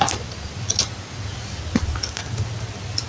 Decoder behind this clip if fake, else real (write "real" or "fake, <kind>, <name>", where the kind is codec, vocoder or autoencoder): real